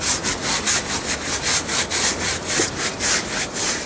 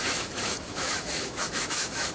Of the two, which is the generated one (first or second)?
second